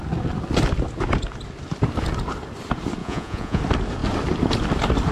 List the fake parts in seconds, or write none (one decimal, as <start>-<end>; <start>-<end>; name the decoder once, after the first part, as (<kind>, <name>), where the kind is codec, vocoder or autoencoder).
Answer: 3.0-3.6 (vocoder, Vocos)